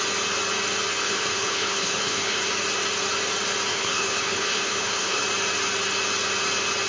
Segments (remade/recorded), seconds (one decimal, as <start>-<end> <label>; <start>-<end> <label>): 0.0-0.9 recorded; 0.9-2.4 remade; 2.4-3.7 recorded; 3.7-5.2 remade; 5.2-6.9 recorded

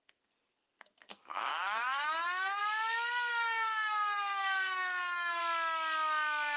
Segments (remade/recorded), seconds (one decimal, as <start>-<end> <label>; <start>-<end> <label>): 0.0-2.6 remade; 2.6-3.3 recorded; 3.3-5.4 remade; 5.4-6.6 recorded

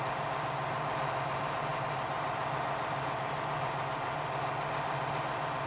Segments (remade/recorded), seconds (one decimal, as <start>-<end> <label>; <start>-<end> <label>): 0.0-5.7 recorded